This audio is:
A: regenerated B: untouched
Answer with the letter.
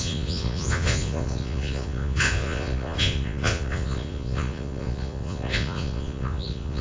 A